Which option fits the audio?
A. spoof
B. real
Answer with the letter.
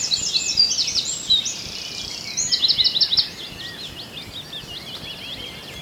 B